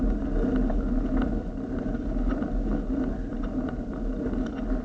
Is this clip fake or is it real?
real